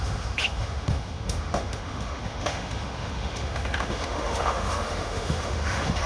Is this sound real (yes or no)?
no